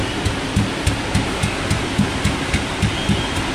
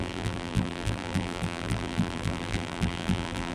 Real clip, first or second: first